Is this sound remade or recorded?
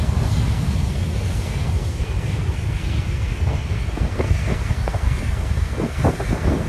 remade